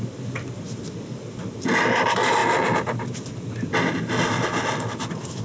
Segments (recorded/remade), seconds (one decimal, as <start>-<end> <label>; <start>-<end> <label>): 0.0-5.4 recorded